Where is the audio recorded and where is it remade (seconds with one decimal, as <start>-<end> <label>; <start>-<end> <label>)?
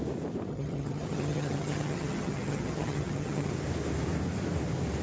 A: 0.0-0.5 recorded; 0.5-3.5 remade; 3.5-5.0 recorded